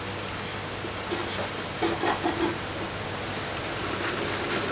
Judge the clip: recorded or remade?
recorded